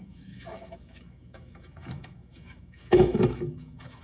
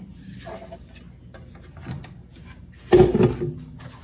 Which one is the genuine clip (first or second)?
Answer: second